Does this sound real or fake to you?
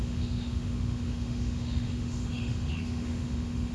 fake